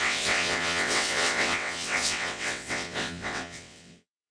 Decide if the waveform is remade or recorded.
remade